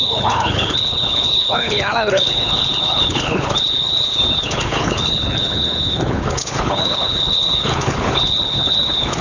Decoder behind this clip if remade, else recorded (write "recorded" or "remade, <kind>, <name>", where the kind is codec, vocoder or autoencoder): remade, codec, HILCodec